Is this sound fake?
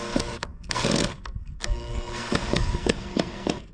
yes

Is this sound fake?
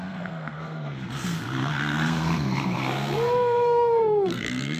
yes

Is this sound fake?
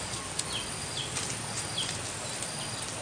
no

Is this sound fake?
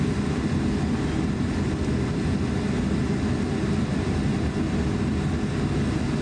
no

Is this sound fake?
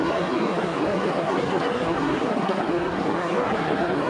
yes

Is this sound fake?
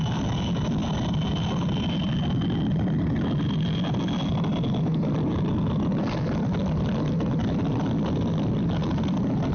no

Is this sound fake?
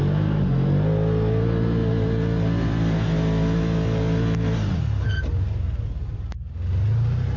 no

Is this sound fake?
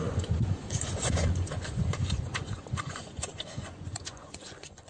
yes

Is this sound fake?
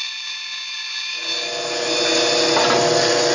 no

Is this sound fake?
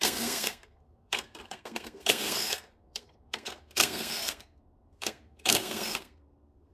yes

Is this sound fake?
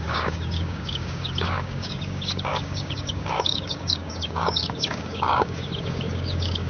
yes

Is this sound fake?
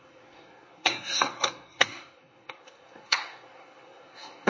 yes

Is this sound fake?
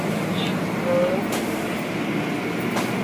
no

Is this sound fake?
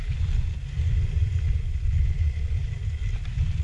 no